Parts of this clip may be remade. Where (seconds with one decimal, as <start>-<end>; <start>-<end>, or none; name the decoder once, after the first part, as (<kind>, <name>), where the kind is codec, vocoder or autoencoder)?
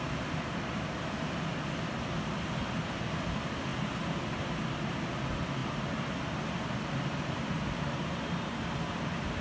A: none